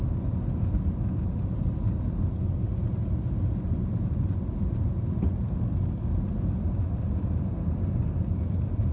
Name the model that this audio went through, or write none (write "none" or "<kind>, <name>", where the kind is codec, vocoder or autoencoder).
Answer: none